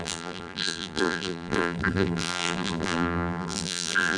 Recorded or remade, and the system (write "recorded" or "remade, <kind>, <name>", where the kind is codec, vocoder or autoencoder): remade, vocoder, BigVGAN v2